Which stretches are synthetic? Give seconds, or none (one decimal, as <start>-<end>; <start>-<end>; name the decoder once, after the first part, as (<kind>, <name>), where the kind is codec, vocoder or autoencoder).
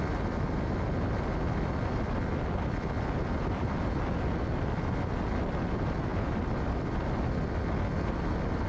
6.1-6.9 (vocoder, BigVGAN v2)